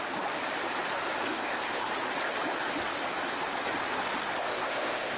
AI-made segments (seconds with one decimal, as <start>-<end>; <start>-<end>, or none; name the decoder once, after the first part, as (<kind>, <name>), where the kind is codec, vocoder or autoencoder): 1.3-1.9 (codec, ZipCodec); 4.4-5.2